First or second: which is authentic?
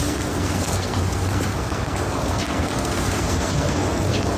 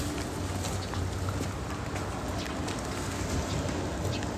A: second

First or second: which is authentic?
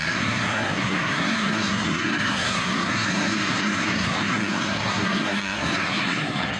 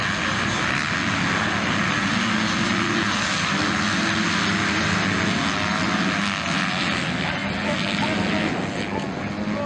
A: second